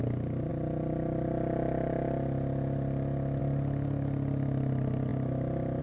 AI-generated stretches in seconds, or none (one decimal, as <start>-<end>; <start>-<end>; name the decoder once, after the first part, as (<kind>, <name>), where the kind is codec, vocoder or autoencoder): none